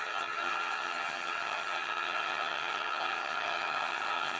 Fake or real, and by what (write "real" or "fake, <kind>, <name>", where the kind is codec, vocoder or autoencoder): fake, vocoder, HiFi-GAN